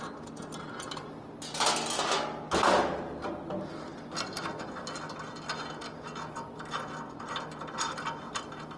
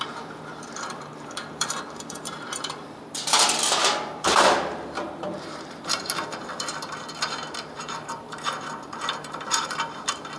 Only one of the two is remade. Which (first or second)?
second